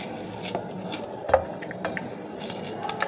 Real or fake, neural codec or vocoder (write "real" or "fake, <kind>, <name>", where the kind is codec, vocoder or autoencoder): real